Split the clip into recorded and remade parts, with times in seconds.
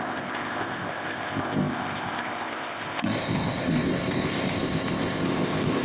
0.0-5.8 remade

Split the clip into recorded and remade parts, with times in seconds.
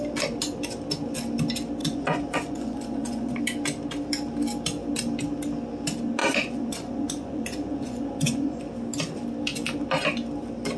0.0-1.8 recorded; 1.8-3.4 remade; 3.4-6.2 recorded; 6.2-8.6 remade; 8.6-10.8 recorded